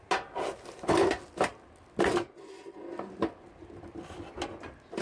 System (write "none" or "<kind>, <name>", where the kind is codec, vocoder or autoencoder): none